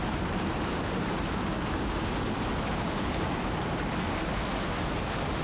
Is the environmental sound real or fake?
real